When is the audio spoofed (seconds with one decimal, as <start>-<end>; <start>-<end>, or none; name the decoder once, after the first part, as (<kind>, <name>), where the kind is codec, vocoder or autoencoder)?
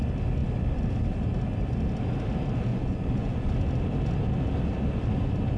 2.7-3.5 (vocoder, Vocos)